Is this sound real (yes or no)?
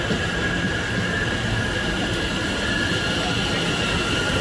yes